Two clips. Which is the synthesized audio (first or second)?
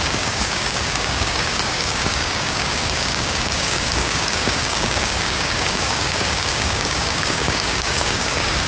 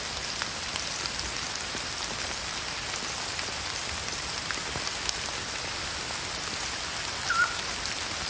first